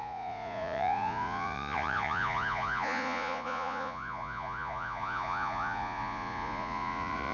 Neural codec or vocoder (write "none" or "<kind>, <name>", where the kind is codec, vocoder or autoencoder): vocoder, Vocos